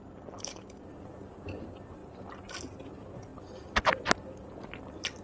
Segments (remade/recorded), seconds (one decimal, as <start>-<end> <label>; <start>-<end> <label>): 0.0-5.2 recorded